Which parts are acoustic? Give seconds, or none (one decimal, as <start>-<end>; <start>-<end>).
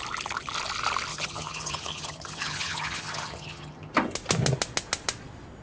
0.0-1.1; 3.9-5.6